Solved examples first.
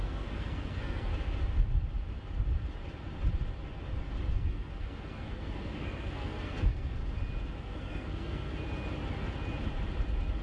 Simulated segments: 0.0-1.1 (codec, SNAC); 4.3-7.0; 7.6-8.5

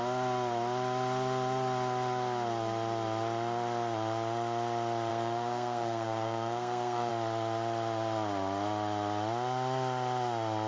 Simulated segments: 5.1-7.1 (codec, SNAC)